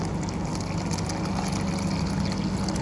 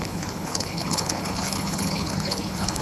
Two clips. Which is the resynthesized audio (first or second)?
second